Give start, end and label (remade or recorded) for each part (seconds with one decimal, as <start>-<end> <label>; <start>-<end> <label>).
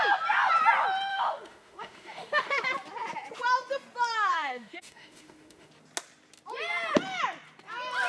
0.0-1.1 recorded; 1.1-2.6 remade; 2.6-4.3 recorded; 4.3-5.7 remade; 5.7-8.1 recorded